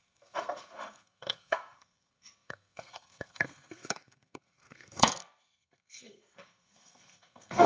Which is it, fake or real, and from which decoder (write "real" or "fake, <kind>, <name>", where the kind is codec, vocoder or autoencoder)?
fake, codec, SNAC